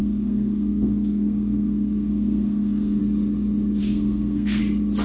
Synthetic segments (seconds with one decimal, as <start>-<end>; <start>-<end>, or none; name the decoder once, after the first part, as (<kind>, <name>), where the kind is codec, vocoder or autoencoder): 0.0-3.0 (codec, SNAC); 3.8-4.6